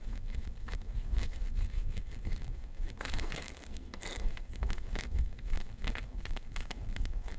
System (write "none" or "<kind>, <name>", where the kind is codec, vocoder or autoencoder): codec, SNAC